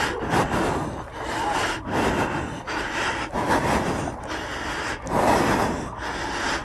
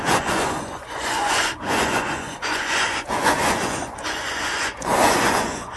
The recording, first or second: first